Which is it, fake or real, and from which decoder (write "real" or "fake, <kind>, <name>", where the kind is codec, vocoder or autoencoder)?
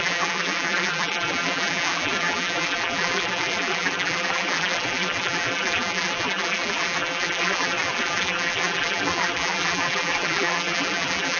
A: fake, vocoder, BigVGAN v2